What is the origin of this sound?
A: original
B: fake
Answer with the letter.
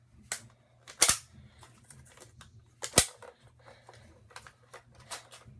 A